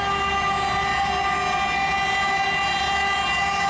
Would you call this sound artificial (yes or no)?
no